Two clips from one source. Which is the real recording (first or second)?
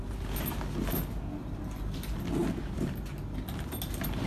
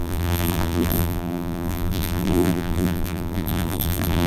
first